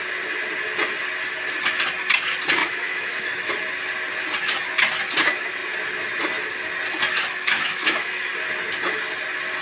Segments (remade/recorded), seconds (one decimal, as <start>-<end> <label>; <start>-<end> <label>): 0.0-2.6 recorded; 2.6-3.5 remade; 3.5-7.3 recorded; 7.3-8.3 remade; 8.3-9.6 recorded